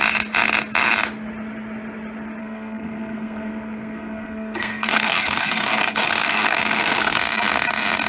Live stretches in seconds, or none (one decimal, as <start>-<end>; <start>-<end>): 0.0-2.4; 7.2-8.1